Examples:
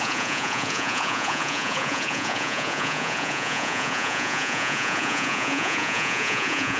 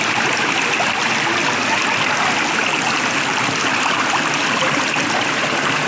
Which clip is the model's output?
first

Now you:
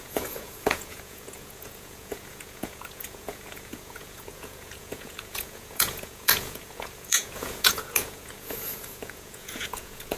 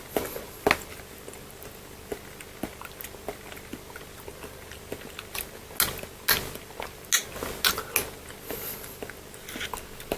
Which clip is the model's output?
first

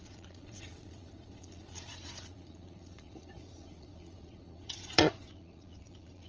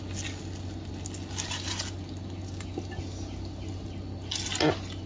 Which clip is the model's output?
first